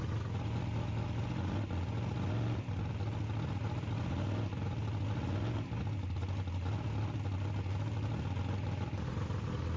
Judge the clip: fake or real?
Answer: real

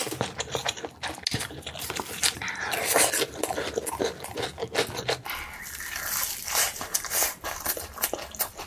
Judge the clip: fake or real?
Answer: real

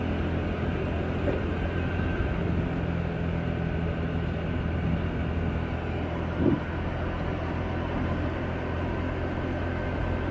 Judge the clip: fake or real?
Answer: real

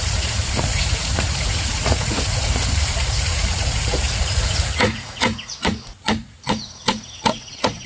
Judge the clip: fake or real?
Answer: fake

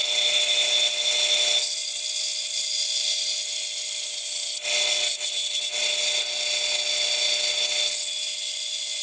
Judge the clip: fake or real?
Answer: real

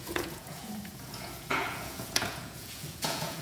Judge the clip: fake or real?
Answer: fake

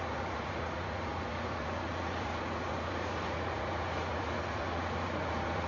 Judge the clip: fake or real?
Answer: fake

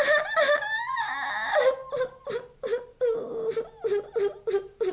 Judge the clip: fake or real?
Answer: real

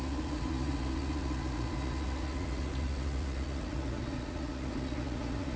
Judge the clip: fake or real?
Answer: fake